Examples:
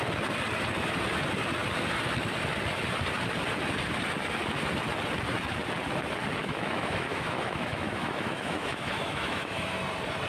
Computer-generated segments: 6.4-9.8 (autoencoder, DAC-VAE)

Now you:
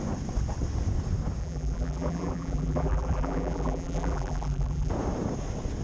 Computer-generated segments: 1.4-4.9 (vocoder, BigVGAN v2)

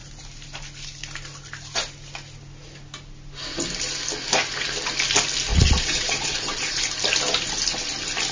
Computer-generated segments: 5.5-6.8 (vocoder, Vocos)